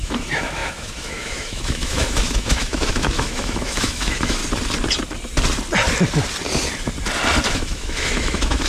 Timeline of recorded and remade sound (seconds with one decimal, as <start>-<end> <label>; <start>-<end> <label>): 0.0-4.4 remade; 4.4-7.5 recorded; 7.5-8.7 remade